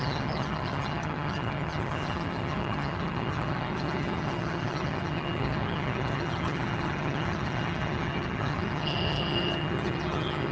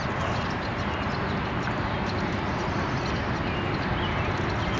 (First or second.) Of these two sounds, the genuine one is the second